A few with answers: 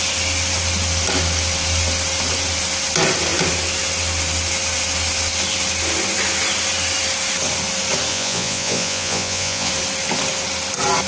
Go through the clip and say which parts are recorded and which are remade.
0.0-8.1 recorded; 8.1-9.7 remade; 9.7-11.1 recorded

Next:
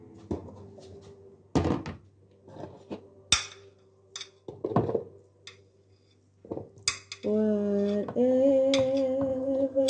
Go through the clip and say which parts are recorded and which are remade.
0.0-9.3 recorded; 9.3-9.9 remade

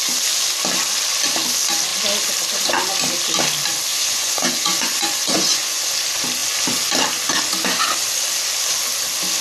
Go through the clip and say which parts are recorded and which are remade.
0.0-3.9 recorded; 3.9-5.8 remade; 5.8-9.4 recorded

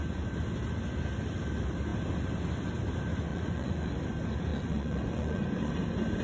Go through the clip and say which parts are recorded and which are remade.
0.0-3.3 recorded; 3.3-3.9 remade; 3.9-4.5 recorded; 4.5-5.7 remade; 5.7-6.2 recorded

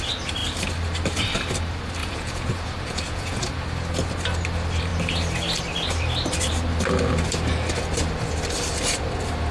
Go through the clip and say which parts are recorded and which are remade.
0.0-2.0 recorded; 2.0-3.5 remade; 3.5-9.5 recorded

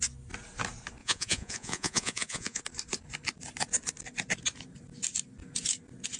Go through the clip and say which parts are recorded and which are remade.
0.0-1.0 recorded; 1.0-2.6 remade; 2.6-6.2 recorded

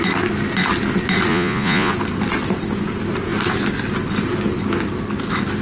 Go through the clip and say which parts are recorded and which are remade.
0.0-1.3 recorded; 1.3-1.9 remade; 1.9-5.6 recorded